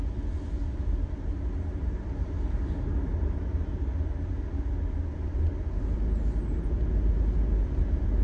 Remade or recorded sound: recorded